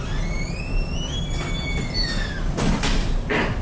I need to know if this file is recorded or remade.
recorded